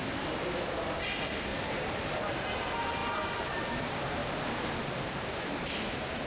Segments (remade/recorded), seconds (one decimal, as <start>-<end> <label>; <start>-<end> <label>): 0.0-1.5 recorded; 1.5-2.5 remade; 2.5-3.0 recorded; 3.0-3.6 remade; 3.6-4.2 recorded; 4.2-6.3 remade